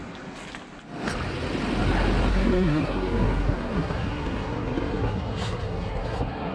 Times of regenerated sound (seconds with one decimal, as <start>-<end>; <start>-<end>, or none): 2.3-6.5